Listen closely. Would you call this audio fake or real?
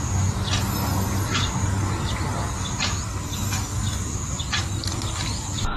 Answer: real